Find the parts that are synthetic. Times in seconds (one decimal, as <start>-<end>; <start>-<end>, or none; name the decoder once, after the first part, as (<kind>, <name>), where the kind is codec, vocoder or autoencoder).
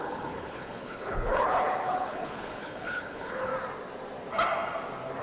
0.0-3.5 (codec, HILCodec)